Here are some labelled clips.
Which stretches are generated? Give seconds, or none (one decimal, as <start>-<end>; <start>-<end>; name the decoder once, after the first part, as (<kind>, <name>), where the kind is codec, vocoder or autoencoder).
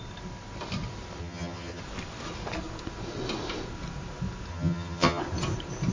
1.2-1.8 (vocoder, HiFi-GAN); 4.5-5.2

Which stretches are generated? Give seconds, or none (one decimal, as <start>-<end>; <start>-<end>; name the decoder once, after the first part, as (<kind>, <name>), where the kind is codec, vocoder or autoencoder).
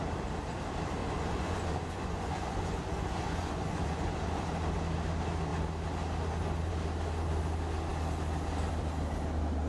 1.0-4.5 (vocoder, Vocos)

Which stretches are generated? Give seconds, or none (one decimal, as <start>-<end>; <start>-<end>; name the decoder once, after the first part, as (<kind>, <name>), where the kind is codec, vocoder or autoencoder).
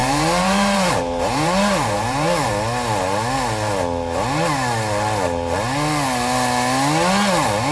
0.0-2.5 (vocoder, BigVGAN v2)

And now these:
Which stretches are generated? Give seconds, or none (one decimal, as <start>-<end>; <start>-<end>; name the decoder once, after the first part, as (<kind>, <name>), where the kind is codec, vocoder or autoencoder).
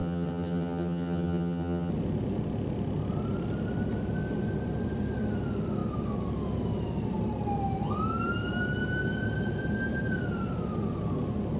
0.0-1.9 (vocoder, HiFi-GAN)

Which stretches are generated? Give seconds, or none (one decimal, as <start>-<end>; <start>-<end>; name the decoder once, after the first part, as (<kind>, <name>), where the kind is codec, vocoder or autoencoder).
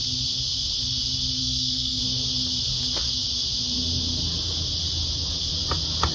1.4-2.0 (codec, SNAC)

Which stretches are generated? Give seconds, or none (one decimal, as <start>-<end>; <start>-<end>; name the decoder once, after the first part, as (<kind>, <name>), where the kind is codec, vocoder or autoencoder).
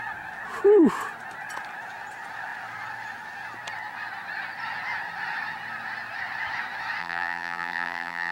7.0-8.3 (vocoder, BigVGAN v2)